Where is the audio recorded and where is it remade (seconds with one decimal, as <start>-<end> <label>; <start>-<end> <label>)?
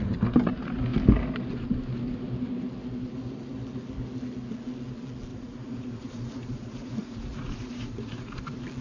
0.0-5.3 recorded; 5.3-8.4 remade; 8.4-8.8 recorded